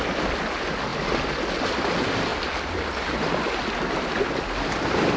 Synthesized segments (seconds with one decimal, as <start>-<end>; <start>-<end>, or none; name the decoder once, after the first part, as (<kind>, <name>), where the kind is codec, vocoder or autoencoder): none